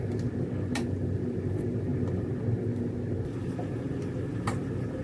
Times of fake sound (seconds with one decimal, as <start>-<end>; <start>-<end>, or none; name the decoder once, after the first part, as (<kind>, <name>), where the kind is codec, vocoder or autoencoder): none